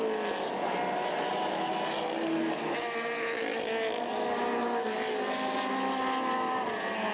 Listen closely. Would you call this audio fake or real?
real